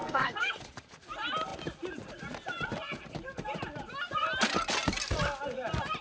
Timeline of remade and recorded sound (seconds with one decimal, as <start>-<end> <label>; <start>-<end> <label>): 0.0-0.5 remade; 0.5-6.0 recorded